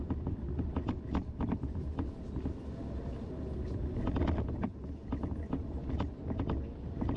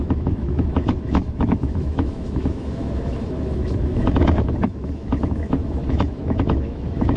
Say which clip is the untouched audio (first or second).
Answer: first